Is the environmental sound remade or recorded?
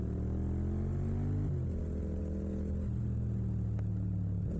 recorded